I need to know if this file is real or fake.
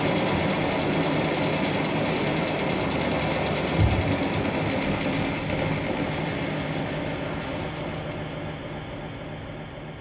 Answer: real